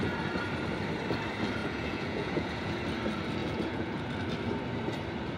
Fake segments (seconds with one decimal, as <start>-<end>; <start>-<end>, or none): 1.6-2.8; 3.4-4.1